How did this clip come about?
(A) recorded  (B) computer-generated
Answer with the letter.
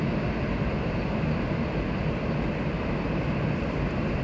A